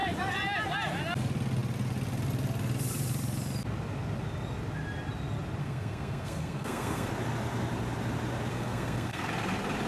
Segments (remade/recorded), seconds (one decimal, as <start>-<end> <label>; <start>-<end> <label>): 0.0-5.6 recorded; 5.6-7.1 remade; 7.1-8.5 recorded; 8.5-9.3 remade; 9.3-9.9 recorded